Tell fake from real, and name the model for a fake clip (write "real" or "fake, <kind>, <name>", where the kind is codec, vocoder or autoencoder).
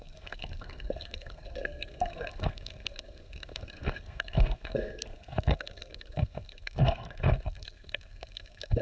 fake, codec, SNAC